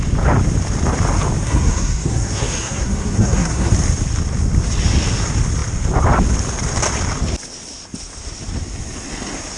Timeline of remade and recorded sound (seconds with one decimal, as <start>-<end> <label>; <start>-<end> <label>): 0.0-1.4 recorded; 1.4-3.7 remade; 3.7-9.6 recorded